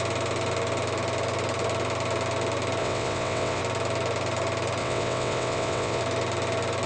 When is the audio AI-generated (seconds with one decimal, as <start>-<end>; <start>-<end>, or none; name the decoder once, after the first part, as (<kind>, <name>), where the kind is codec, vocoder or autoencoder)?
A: 2.8-3.6 (vocoder, WaveNeXt); 4.8-6.0